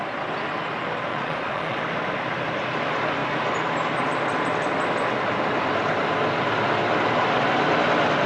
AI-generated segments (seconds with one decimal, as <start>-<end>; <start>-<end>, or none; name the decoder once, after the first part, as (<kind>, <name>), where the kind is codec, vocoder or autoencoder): 1.1-1.8 (vocoder, Vocos)